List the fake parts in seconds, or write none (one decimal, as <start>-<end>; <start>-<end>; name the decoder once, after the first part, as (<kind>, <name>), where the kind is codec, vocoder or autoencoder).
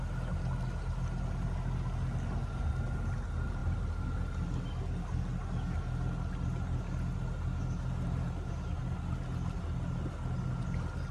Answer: none